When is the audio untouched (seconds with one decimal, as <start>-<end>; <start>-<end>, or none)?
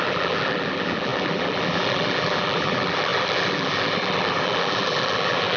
none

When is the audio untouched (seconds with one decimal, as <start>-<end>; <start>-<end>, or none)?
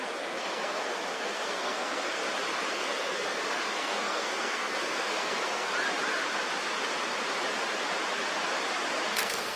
2.2-2.7; 5.7-9.2